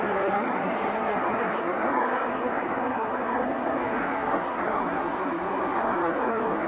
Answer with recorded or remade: remade